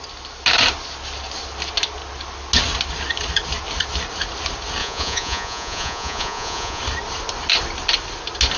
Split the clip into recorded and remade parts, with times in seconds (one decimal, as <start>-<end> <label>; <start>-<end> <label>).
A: 0.0-4.8 recorded; 4.8-6.8 remade; 6.8-8.6 recorded